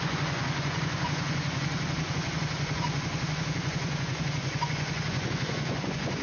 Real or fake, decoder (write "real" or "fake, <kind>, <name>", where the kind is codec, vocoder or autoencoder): fake, vocoder, Vocos